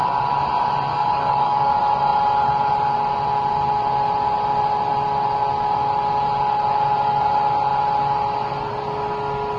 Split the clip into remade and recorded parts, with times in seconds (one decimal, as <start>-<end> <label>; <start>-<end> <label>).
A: 0.0-0.9 recorded; 0.9-1.7 remade; 1.7-9.6 recorded